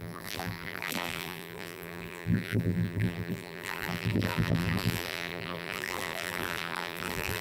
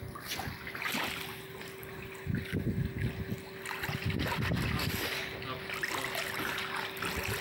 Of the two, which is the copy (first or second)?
first